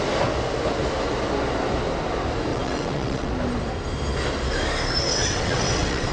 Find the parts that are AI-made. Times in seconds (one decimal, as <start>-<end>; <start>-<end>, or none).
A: 2.5-3.3; 5.1-6.1

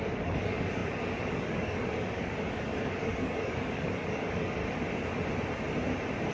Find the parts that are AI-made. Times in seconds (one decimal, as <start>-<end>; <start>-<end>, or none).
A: 0.0-4.6

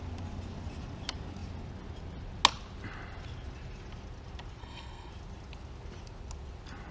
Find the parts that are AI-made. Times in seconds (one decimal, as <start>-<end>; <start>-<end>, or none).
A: 4.6-5.1

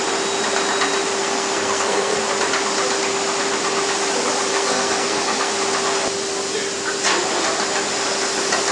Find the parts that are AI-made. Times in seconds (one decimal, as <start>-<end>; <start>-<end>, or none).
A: 1.2-2.2; 4.5-5.5

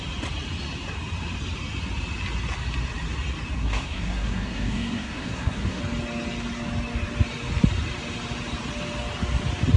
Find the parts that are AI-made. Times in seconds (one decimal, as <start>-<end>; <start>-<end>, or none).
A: 3.6-5.8